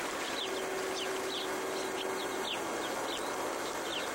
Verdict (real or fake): real